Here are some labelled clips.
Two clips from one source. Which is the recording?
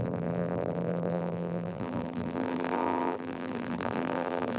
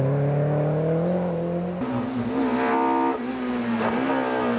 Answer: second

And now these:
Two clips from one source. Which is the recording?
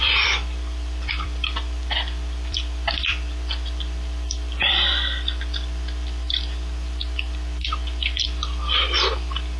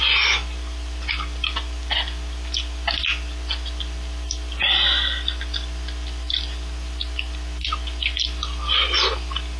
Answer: second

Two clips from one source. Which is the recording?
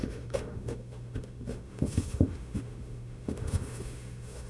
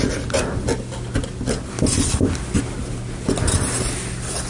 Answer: second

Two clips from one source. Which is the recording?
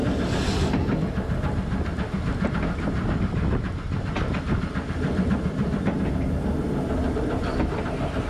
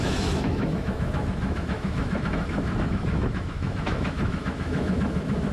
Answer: first